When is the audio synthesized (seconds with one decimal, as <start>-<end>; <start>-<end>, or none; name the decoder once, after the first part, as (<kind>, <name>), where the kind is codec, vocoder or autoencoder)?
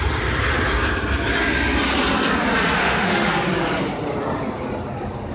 2.8-3.3 (autoencoder, DAC-VAE)